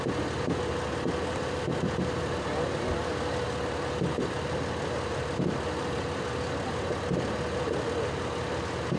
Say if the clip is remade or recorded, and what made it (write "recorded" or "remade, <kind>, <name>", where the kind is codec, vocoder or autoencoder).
recorded